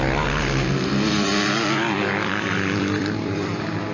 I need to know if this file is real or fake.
real